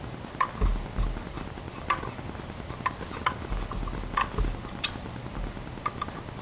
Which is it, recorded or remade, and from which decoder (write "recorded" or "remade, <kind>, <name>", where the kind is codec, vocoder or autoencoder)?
recorded